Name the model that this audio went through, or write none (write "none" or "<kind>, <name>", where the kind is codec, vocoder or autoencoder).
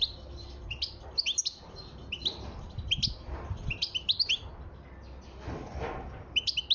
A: none